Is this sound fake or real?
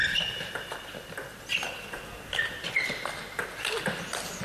real